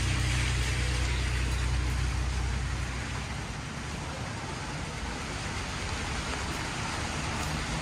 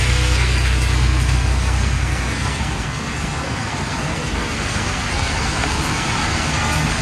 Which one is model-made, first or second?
second